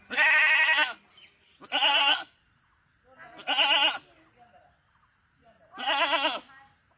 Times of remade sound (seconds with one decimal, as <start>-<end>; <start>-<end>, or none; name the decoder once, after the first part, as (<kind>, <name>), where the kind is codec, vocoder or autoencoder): 1.9-2.4 (codec, SNAC)